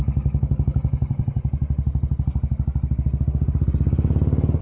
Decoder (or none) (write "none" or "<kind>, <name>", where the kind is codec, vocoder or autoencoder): none